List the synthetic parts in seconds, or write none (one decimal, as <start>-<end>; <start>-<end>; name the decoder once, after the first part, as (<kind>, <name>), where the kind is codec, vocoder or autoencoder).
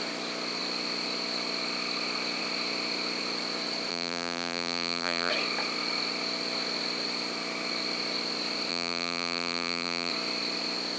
3.9-5.3 (vocoder, BigVGAN v2); 8.7-10.1